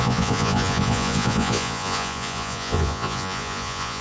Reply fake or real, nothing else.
fake